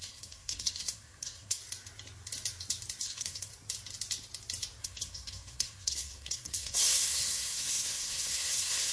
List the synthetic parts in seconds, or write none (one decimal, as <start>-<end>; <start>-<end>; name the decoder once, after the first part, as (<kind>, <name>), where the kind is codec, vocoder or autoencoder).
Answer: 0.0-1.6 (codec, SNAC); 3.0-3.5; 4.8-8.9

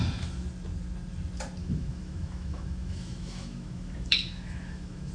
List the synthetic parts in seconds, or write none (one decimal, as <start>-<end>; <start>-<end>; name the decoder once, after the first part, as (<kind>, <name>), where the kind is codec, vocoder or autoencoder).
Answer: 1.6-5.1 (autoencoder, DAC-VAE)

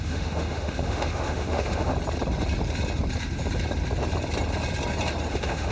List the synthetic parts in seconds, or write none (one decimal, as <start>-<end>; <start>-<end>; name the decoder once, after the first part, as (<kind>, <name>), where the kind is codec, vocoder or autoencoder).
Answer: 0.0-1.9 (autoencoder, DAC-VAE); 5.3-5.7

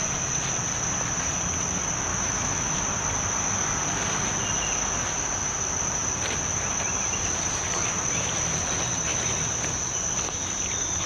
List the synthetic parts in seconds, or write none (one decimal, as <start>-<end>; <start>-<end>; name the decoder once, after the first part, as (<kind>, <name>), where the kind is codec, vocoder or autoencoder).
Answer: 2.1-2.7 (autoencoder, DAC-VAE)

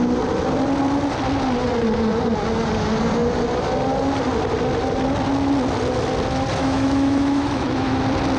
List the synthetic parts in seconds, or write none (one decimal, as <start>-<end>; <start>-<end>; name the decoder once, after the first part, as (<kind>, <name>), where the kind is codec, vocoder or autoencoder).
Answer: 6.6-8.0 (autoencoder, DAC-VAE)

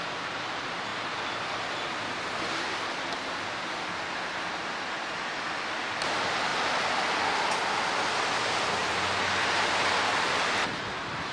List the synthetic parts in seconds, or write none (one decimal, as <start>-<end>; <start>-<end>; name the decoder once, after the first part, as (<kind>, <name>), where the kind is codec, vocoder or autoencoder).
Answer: none

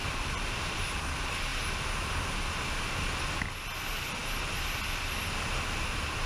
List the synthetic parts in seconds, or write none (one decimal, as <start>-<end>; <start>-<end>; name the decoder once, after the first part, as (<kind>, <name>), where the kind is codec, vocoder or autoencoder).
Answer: 0.0-0.6 (vocoder, BigVGAN v2)